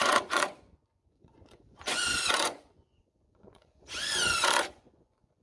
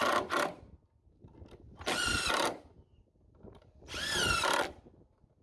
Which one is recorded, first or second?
second